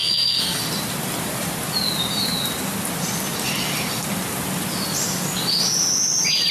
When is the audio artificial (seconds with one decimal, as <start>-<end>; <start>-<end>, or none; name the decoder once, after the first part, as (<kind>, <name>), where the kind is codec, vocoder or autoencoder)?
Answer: 0.0-0.6 (codec, SNAC)